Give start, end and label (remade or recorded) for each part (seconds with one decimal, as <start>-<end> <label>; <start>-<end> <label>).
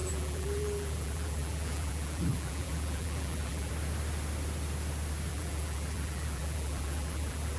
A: 0.0-3.7 remade; 3.7-5.3 recorded; 5.3-7.6 remade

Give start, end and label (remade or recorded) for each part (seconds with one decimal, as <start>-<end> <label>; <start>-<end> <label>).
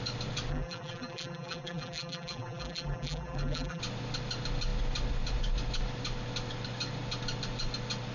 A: 0.0-0.5 recorded; 0.5-3.8 remade; 3.8-8.1 recorded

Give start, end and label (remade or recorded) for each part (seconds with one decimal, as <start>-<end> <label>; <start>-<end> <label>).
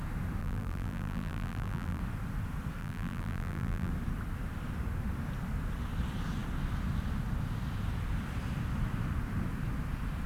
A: 0.0-0.4 recorded; 0.4-2.0 remade; 2.0-2.8 recorded; 2.8-3.9 remade; 3.9-10.3 recorded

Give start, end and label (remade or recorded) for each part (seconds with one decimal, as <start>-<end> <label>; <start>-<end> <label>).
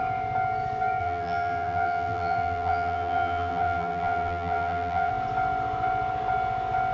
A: 0.0-1.0 recorded; 1.0-5.1 remade; 5.1-6.9 recorded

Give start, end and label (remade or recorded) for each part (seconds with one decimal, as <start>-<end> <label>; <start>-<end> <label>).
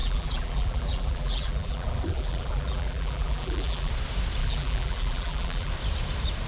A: 0.0-3.9 remade; 3.9-4.4 recorded; 4.4-5.7 remade; 5.7-6.5 recorded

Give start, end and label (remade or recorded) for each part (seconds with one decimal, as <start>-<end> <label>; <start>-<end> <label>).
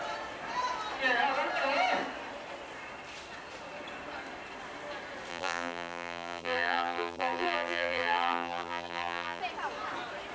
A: 0.0-5.3 recorded; 5.3-9.4 remade; 9.4-10.3 recorded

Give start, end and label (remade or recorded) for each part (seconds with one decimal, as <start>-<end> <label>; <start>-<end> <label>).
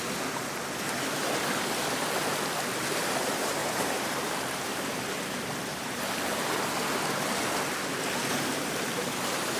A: 0.0-3.6 recorded; 3.6-5.0 remade; 5.0-5.7 recorded; 5.7-6.4 remade; 6.4-8.5 recorded; 8.5-9.6 remade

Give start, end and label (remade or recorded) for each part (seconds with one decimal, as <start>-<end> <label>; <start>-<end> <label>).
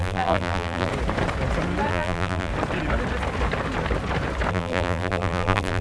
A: 0.0-0.9 remade; 0.9-1.9 recorded; 1.9-2.5 remade; 2.5-4.5 recorded; 4.5-5.8 remade